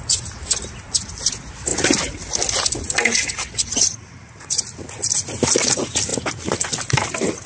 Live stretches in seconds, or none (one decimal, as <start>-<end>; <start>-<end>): 0.0-7.5

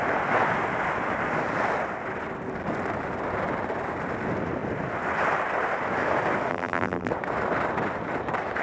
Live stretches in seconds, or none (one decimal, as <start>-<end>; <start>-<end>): 0.0-6.5; 7.1-8.6

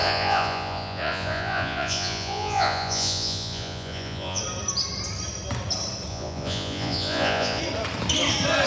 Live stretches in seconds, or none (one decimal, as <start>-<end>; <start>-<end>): 4.4-6.1; 7.6-8.7

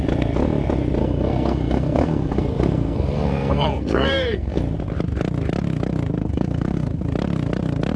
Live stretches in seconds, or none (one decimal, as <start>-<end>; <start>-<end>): 0.0-1.0; 4.6-6.2; 7.0-8.0